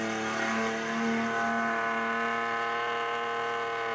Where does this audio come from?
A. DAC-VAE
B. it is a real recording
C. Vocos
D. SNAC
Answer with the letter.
B